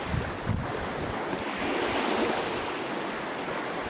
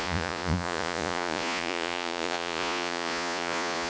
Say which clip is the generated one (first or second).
second